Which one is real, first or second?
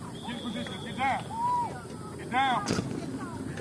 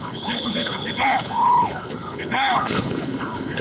first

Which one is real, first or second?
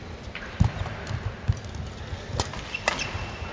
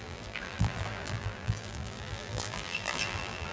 first